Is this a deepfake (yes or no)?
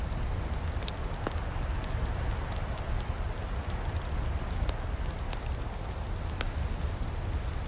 no